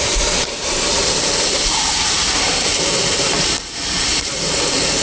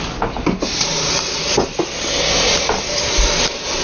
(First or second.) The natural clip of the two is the second